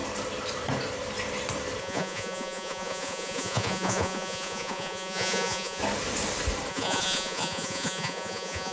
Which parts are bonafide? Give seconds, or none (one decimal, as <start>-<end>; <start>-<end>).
0.0-1.8; 5.8-6.7